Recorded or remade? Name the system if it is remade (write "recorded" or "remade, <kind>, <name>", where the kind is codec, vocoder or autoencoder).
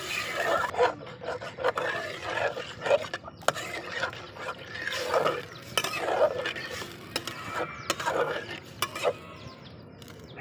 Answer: recorded